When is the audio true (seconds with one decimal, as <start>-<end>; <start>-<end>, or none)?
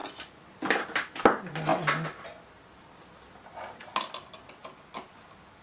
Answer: 1.2-5.6